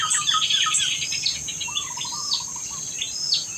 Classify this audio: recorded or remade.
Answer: remade